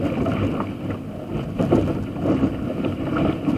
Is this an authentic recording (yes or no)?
yes